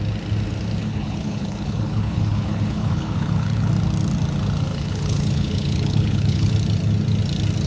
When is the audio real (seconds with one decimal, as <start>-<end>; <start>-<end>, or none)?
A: 0.0-0.8; 3.7-4.7; 6.5-7.7